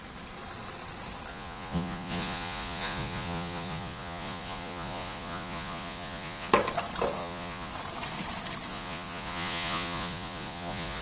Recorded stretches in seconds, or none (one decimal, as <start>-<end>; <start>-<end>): 0.0-1.3; 6.5-7.2; 7.7-8.7